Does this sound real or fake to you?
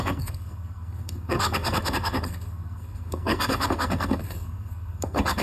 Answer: fake